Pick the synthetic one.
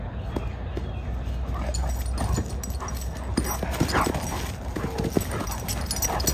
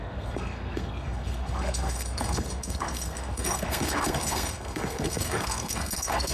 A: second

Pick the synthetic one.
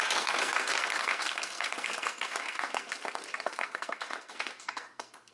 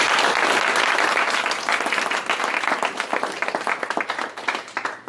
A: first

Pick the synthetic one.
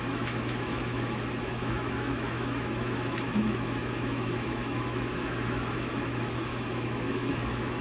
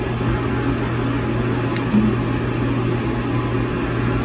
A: first